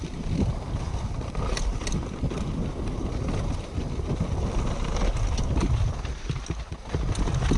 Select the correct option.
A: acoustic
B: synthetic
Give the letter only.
A